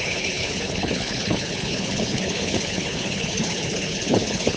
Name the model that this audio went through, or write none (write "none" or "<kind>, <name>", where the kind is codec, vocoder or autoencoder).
codec, HILCodec